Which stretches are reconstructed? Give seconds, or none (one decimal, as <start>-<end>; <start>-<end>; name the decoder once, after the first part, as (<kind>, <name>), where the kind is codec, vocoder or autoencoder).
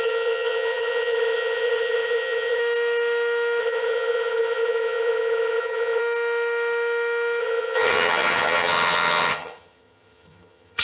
0.0-2.6 (vocoder, HiFi-GAN); 3.6-6.0; 7.4-10.8